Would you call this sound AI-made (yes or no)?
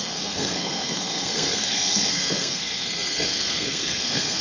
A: yes